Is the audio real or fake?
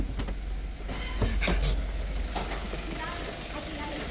real